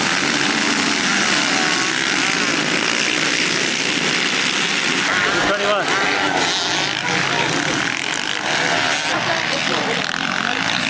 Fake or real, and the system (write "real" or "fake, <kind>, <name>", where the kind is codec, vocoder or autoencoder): real